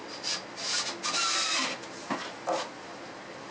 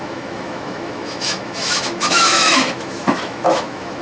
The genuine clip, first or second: first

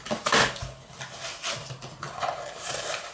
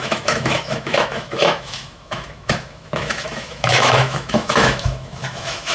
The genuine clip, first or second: first